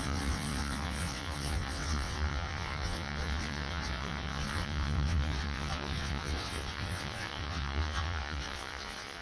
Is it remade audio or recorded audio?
remade